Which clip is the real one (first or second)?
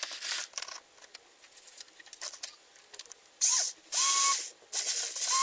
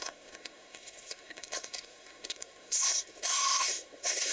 first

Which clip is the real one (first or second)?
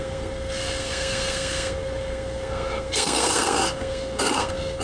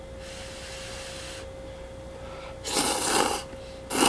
second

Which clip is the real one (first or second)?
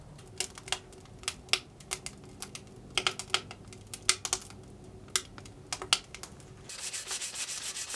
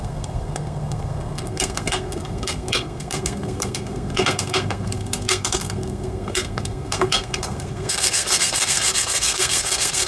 first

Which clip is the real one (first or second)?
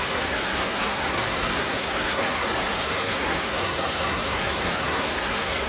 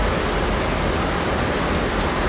second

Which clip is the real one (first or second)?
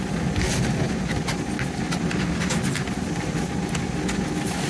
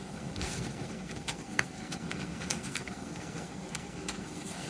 first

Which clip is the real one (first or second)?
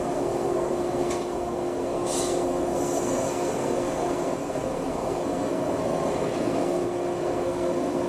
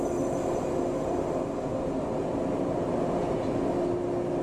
second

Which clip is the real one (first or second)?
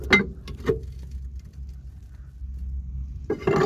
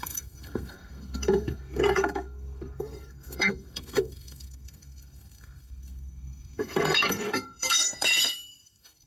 first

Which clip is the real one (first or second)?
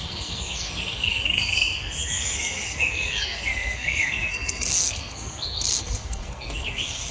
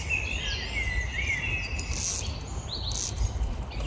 second